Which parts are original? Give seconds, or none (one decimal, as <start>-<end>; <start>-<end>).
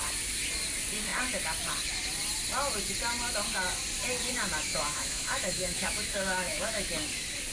0.0-4.7; 6.9-7.5